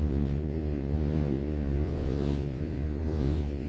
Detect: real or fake fake